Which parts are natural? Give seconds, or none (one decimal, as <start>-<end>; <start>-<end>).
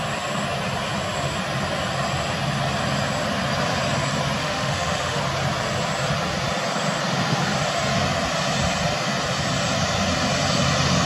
0.0-4.4; 5.2-11.1